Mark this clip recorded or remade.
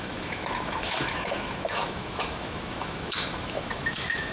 remade